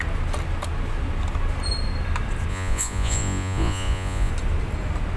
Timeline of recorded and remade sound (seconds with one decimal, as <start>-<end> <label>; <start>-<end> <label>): 0.0-2.5 recorded; 2.5-4.3 remade; 4.3-5.2 recorded